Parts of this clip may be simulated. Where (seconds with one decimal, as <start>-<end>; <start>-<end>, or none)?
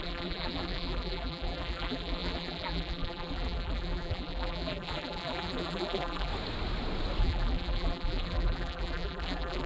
0.0-6.3; 7.2-9.7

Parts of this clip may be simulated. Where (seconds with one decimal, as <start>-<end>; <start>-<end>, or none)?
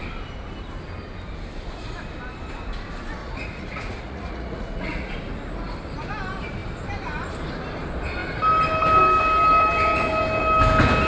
3.2-5.1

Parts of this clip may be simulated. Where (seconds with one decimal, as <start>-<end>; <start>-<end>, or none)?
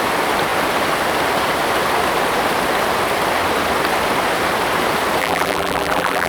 5.2-6.3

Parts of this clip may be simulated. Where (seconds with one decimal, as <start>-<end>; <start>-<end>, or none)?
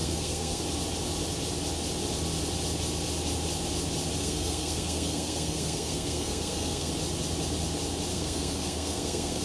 0.0-0.6; 4.2-6.9; 8.1-9.4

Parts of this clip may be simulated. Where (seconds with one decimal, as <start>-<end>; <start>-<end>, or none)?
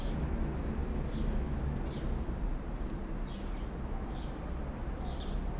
none